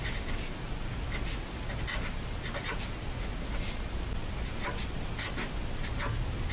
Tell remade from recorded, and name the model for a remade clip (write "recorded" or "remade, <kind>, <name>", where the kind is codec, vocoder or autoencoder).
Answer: recorded